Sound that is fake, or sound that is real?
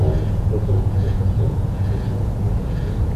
fake